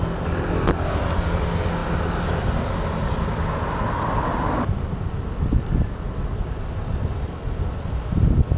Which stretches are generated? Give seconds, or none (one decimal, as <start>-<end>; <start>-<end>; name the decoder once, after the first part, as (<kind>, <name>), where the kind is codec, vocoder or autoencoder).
none